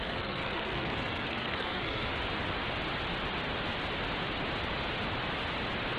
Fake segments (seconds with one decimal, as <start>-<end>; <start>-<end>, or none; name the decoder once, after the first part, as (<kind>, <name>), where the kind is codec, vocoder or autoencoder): 0.0-2.1 (codec, SNAC)